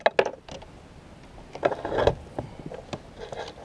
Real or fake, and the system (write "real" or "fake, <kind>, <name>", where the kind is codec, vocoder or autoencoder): real